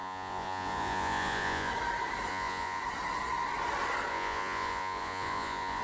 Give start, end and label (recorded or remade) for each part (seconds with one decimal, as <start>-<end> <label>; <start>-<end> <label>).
0.0-1.7 remade; 1.7-2.3 recorded; 2.3-2.8 remade; 2.8-4.1 recorded; 4.1-5.8 remade